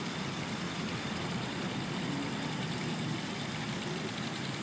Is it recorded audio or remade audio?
recorded